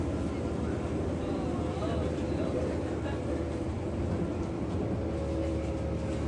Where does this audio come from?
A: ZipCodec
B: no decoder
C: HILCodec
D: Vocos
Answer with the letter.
B